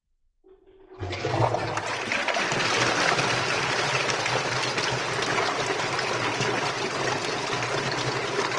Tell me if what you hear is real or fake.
real